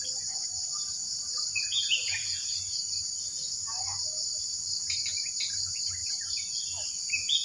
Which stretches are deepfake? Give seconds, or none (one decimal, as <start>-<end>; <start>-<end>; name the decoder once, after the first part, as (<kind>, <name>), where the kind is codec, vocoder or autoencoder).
1.0-3.0 (vocoder, Vocos); 6.0-6.6